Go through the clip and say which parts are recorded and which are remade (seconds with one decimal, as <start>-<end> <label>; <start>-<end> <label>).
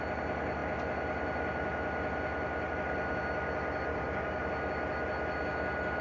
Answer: 0.0-3.9 recorded; 3.9-4.4 remade; 4.4-6.0 recorded